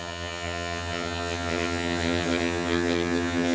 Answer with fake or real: fake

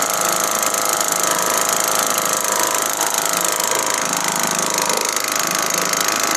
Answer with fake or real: real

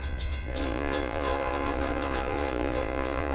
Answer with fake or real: fake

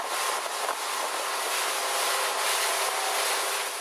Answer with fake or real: real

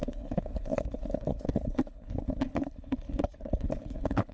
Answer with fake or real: fake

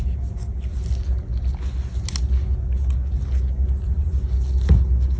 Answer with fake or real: real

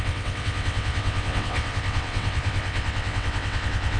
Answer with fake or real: fake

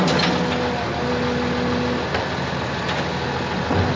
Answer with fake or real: real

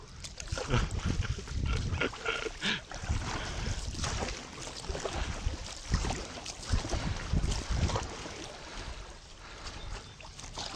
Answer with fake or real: real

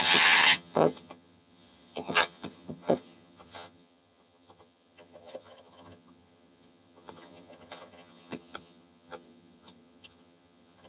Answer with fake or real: fake